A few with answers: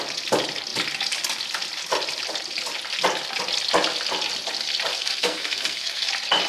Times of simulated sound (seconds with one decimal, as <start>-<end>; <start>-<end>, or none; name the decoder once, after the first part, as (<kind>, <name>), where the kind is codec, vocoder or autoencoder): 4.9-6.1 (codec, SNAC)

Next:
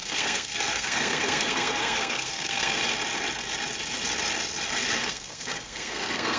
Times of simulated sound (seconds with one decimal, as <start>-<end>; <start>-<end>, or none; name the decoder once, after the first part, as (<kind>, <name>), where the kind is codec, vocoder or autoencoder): 0.0-2.8 (codec, SNAC); 5.0-6.4

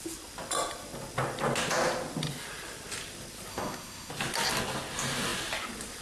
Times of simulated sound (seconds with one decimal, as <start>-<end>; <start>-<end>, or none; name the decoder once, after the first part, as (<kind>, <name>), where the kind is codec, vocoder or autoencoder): 3.5-4.1 (codec, SNAC)

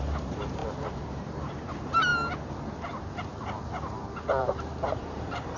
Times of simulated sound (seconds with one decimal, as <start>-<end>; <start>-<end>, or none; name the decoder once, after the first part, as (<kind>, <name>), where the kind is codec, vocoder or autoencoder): 0.0-2.1 (vocoder, BigVGAN v2); 4.4-5.6

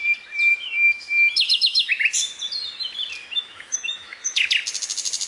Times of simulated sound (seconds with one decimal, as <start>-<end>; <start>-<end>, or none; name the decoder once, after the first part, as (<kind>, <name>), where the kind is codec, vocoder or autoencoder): 0.5-1.9 (autoencoder, DAC-VAE); 3.2-4.5

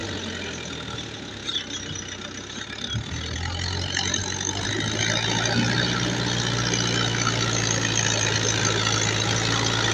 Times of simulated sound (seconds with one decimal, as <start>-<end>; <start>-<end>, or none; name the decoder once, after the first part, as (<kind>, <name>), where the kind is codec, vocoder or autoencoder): none

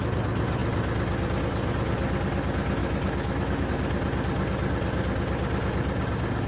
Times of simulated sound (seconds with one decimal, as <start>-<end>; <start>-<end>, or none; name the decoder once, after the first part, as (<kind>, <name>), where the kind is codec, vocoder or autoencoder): 2.8-3.7 (autoencoder, DAC-VAE)

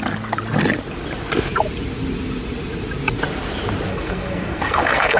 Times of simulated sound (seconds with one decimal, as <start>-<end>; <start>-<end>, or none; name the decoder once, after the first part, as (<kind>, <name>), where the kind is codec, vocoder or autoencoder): 3.9-5.2 (codec, SNAC)